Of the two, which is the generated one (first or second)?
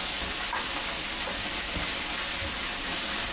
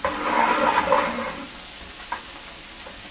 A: first